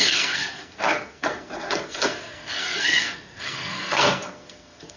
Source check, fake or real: fake